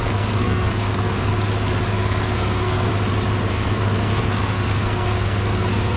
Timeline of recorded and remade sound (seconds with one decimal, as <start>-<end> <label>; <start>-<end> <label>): 0.0-1.3 remade; 1.3-1.9 recorded; 1.9-2.9 remade; 2.9-3.5 recorded; 3.5-6.0 remade